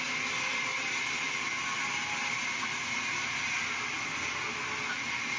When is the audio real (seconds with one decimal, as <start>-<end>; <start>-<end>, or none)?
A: 0.0-5.4